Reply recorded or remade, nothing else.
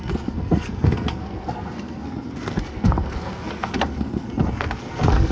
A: remade